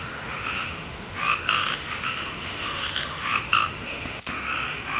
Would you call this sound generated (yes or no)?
yes